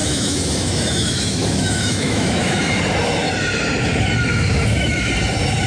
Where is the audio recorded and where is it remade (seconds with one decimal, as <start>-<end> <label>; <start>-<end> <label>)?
0.0-2.8 remade; 2.8-4.3 recorded; 4.3-5.1 remade; 5.1-5.7 recorded